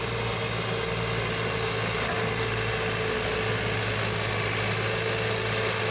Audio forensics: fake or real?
real